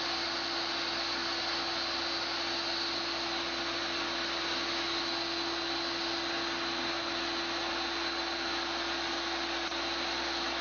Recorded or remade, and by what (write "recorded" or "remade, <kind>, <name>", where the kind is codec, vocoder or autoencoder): recorded